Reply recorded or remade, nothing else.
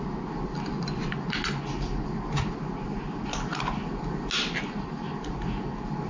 recorded